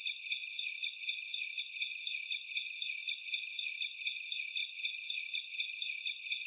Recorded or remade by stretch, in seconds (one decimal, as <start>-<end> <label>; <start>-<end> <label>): 0.0-6.5 recorded